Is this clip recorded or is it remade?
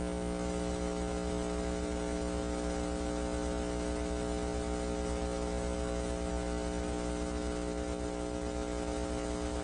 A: recorded